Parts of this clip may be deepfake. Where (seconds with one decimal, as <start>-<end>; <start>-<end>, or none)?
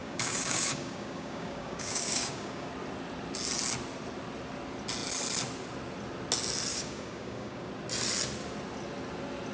0.0-2.7; 6.7-7.7